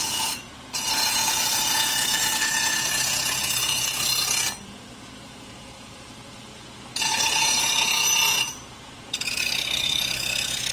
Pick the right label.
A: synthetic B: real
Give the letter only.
A